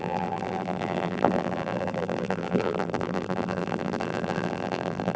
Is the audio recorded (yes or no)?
no